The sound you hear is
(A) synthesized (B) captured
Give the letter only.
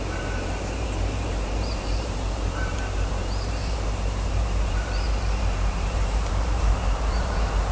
A